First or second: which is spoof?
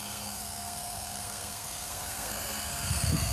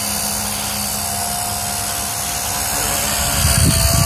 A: first